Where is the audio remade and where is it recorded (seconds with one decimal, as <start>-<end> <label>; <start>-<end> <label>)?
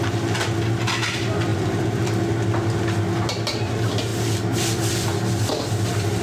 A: 0.0-1.5 recorded; 1.5-2.2 remade; 2.2-6.2 recorded